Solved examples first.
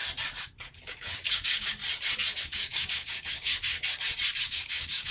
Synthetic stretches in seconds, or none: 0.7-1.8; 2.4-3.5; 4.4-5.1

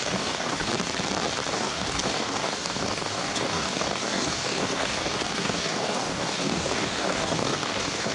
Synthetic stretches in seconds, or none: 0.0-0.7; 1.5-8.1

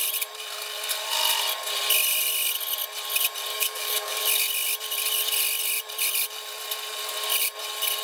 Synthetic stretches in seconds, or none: 3.5-4.2

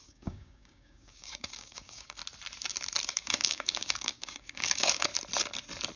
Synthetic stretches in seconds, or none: 0.0-2.2; 3.1-5.1